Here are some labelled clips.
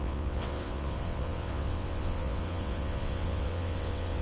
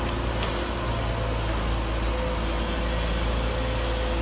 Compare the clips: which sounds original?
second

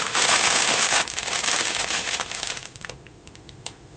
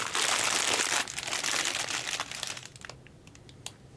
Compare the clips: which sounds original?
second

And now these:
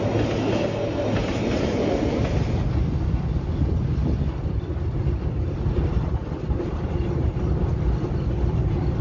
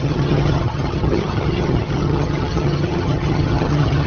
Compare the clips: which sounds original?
first